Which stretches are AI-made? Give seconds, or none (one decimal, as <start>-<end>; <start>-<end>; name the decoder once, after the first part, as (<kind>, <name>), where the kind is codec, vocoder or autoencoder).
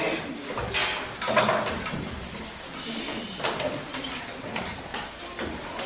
none